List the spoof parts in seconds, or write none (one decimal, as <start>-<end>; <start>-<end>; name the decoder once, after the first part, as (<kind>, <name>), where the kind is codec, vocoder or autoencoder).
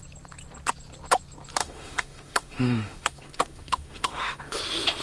1.6-4.6 (autoencoder, DAC-VAE)